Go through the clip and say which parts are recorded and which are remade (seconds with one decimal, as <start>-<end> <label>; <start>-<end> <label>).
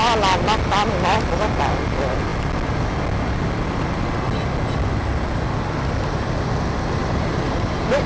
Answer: 0.0-7.0 recorded; 7.0-8.1 remade